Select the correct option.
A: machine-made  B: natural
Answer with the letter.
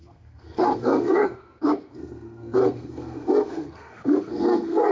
A